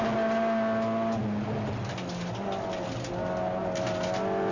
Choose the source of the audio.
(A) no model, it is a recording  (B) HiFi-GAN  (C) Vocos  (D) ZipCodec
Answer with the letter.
A